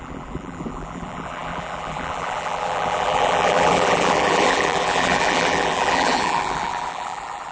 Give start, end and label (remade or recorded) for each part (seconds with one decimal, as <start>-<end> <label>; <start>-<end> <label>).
0.0-7.5 remade